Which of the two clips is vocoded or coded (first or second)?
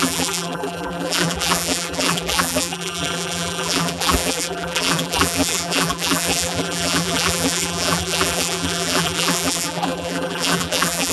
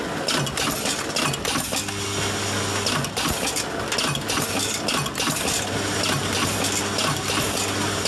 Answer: first